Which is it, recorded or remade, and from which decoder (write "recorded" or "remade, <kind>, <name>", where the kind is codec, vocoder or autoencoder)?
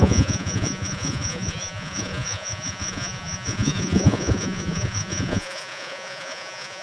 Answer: remade, vocoder, Vocos